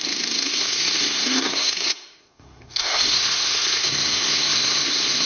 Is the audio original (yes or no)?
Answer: no